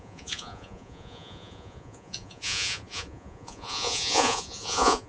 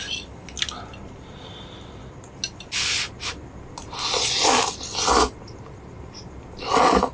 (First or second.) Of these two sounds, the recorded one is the second